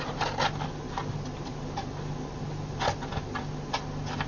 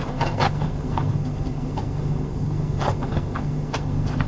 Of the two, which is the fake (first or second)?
second